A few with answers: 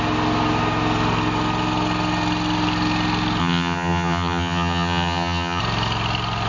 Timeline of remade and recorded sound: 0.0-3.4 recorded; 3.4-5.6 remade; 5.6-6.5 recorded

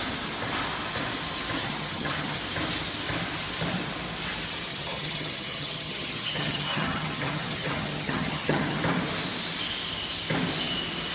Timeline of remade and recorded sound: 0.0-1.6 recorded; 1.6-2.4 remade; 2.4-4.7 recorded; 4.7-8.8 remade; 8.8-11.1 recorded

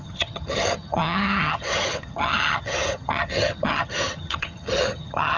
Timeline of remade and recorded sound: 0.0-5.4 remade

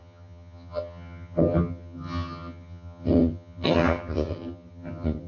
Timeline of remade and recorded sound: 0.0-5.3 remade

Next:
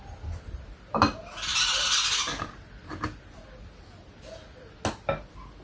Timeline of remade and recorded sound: 0.0-5.6 recorded

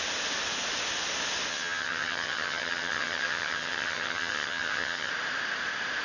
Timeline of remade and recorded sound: 0.0-1.5 recorded; 1.5-5.1 remade; 5.1-6.0 recorded

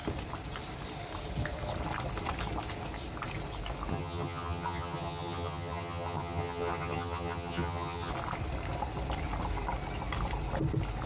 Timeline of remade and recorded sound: 0.0-3.9 recorded; 3.9-8.1 remade; 8.1-11.1 recorded